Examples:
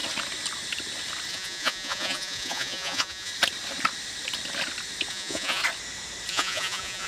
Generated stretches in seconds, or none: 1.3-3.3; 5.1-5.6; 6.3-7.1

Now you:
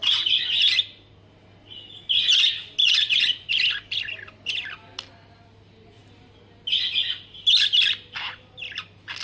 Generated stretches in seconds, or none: 2.8-3.5

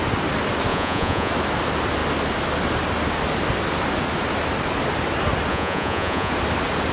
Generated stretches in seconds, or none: 0.7-1.3; 5.5-6.3

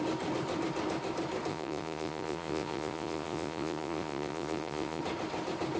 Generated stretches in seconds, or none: 1.5-5.0

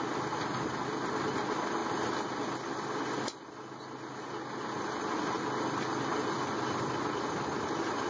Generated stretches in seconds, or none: none

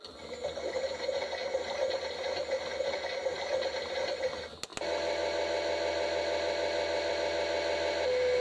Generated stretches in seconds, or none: none

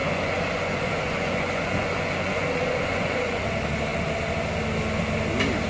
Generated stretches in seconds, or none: 0.0-3.4